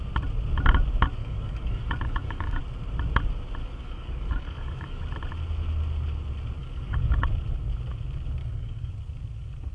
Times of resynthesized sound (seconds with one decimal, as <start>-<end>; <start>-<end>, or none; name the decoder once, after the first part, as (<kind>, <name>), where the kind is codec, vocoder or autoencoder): 1.2-2.6 (codec, DAC); 3.6-5.0; 6.6-7.3; 8.4-8.9